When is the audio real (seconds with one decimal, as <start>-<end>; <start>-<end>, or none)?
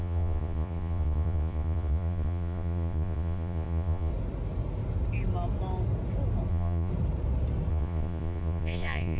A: 4.1-6.5; 6.9-7.7